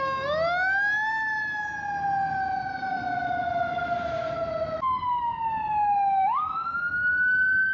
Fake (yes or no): no